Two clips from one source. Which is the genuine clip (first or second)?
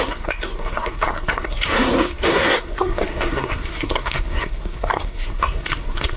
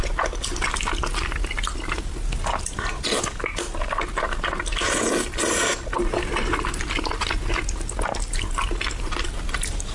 second